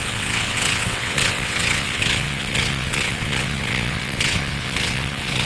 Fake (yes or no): yes